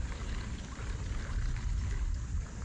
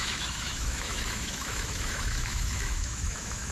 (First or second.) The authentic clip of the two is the first